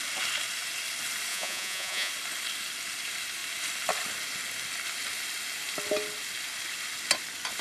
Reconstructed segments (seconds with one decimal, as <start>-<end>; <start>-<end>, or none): 1.3-2.1